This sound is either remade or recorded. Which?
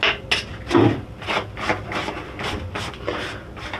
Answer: recorded